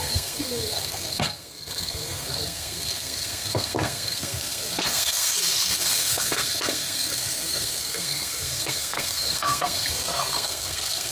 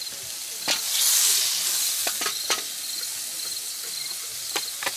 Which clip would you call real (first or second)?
second